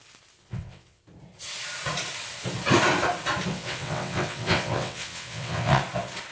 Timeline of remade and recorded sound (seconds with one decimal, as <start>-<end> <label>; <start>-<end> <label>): 0.0-0.4 recorded; 0.4-1.0 remade; 1.0-3.5 recorded; 3.5-5.8 remade; 5.8-6.3 recorded